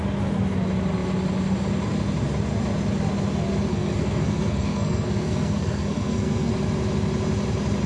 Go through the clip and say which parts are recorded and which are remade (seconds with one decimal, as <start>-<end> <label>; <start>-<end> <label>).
0.0-3.7 recorded; 3.7-6.5 remade; 6.5-7.9 recorded